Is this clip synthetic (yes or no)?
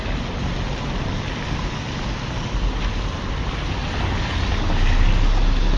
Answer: no